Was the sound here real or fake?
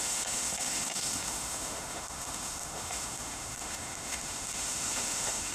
fake